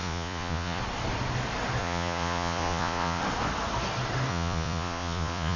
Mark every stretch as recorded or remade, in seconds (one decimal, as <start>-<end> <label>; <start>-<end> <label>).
0.0-0.8 remade; 0.8-1.8 recorded; 1.8-3.2 remade; 3.2-4.3 recorded; 4.3-5.6 remade